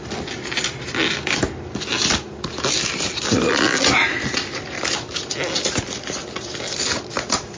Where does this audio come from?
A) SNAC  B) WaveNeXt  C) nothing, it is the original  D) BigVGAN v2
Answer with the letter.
C